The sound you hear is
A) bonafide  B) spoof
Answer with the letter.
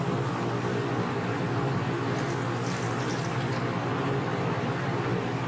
A